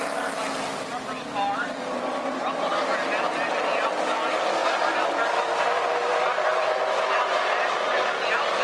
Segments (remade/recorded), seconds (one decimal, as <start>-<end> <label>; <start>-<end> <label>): 0.0-8.6 recorded